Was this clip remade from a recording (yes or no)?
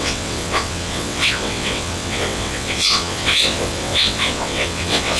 yes